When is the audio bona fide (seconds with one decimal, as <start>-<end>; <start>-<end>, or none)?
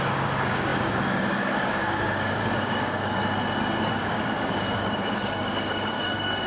3.2-3.8